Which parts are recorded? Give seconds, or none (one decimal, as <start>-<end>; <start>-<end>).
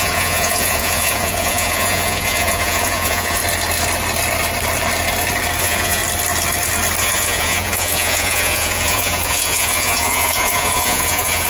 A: 3.4-5.6; 6.0-7.0